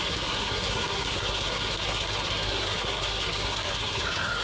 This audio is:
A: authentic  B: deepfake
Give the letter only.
B